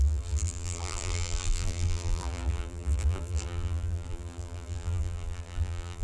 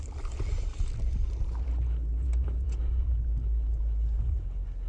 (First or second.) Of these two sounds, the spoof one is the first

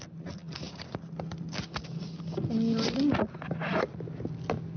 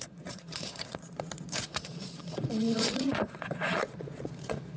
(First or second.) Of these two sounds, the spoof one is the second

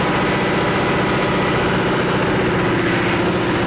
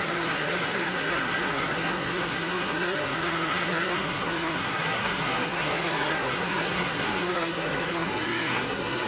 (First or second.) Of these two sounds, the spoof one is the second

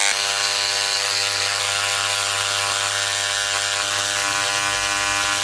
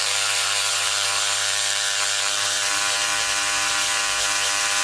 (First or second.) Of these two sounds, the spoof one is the second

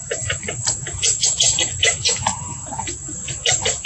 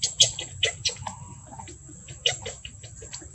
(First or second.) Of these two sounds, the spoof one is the first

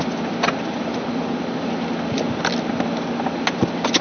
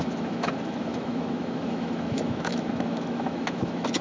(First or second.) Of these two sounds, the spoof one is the second